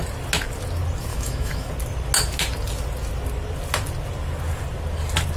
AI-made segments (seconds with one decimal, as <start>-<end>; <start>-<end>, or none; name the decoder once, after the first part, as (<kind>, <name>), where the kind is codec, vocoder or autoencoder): 1.1-1.7 (autoencoder, DAC-VAE)